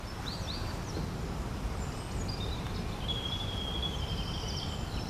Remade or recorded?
recorded